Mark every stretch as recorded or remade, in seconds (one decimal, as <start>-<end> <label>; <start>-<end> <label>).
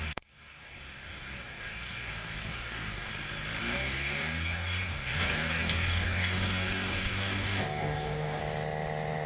0.0-3.1 remade; 3.1-3.6 recorded; 3.6-8.4 remade; 8.4-9.3 recorded